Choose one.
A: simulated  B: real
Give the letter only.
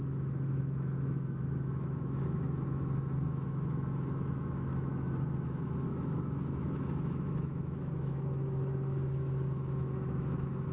A